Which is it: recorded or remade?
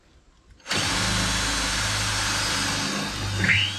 recorded